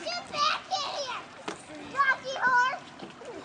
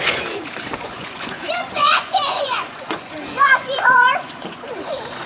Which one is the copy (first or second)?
second